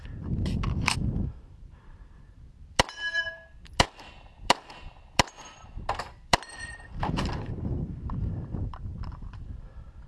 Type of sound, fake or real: fake